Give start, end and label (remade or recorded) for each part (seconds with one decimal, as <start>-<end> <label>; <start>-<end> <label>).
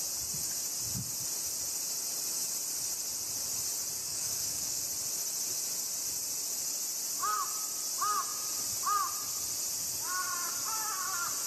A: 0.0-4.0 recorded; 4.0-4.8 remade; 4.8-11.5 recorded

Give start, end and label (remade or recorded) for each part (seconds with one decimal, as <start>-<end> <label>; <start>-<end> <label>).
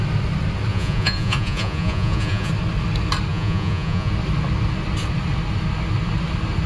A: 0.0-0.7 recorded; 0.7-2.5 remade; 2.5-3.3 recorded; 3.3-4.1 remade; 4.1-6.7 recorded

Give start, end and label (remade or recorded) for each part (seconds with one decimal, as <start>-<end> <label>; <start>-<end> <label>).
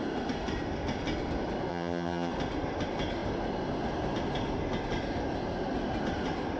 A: 0.0-1.7 recorded; 1.7-2.3 remade; 2.3-6.6 recorded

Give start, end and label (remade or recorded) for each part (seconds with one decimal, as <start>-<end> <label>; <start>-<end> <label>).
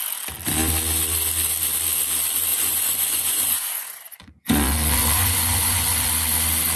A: 0.0-2.5 recorded; 2.5-6.1 remade; 6.1-6.8 recorded